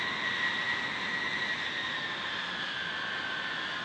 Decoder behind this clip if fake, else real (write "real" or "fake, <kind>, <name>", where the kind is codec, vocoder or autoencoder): real